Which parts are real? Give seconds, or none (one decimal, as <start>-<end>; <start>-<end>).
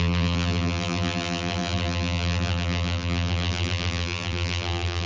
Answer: none